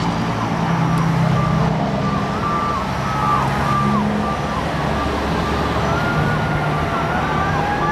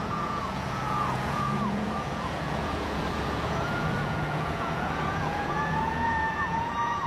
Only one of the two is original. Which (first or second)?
first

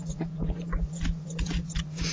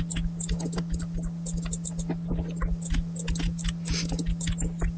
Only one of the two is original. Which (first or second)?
second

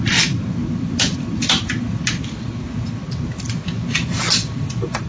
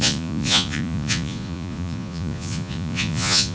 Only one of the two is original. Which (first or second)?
first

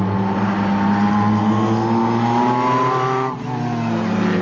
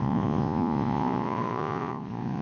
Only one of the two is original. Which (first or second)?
first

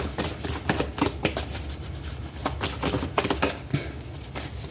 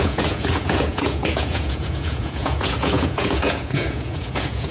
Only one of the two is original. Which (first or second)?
first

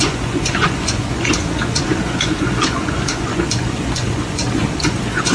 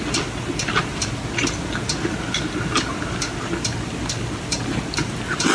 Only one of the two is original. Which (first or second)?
second